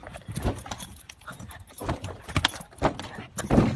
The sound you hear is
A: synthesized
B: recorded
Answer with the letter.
B